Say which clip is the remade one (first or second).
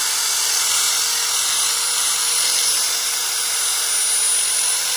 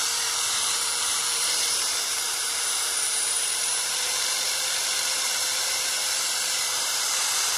second